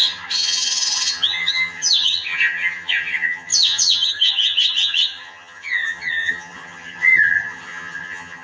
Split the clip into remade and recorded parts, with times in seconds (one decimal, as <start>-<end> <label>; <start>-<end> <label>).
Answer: 0.0-8.4 remade